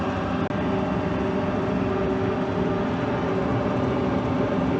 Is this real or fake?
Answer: real